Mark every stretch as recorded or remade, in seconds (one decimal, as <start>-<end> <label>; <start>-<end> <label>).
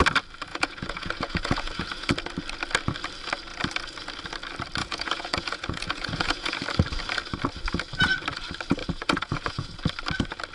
0.0-0.5 recorded; 0.5-2.1 remade; 2.1-4.8 recorded; 4.8-6.6 remade; 6.6-8.8 recorded; 8.8-9.8 remade; 9.8-10.5 recorded